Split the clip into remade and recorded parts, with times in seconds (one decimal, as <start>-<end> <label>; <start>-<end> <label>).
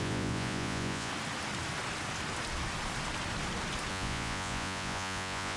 0.0-1.1 remade; 1.1-3.9 recorded; 3.9-5.6 remade